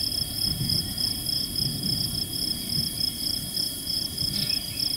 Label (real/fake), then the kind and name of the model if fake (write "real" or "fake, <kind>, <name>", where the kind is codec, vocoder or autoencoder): real